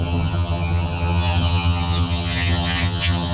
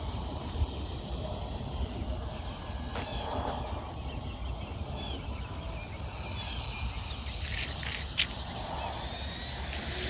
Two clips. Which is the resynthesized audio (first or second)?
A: first